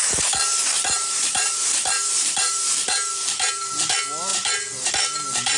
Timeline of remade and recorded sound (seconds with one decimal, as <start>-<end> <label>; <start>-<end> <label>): 0.0-0.5 recorded; 0.5-3.9 remade; 3.9-5.6 recorded